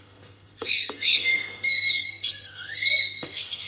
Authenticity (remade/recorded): remade